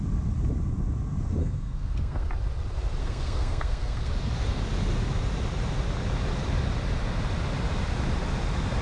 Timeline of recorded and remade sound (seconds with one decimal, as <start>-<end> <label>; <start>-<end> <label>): 0.0-1.4 recorded; 1.4-2.3 remade; 2.3-3.0 recorded; 3.0-4.1 remade; 4.1-8.8 recorded